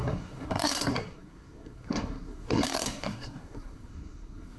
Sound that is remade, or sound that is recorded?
remade